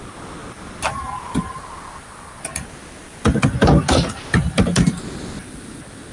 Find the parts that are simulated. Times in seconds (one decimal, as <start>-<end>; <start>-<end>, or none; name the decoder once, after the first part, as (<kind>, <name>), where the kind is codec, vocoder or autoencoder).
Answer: none